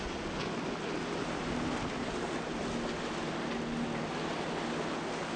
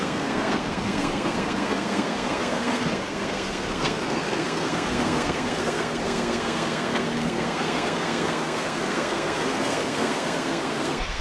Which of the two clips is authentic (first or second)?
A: first